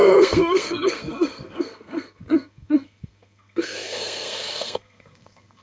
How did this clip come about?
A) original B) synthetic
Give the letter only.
B